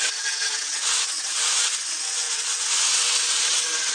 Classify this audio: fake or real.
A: fake